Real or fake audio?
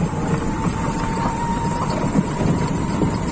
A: fake